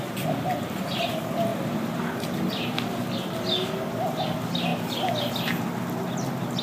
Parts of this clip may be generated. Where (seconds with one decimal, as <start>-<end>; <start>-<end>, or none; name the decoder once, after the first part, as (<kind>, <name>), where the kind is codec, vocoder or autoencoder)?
1.5-3.0 (vocoder, BigVGAN v2)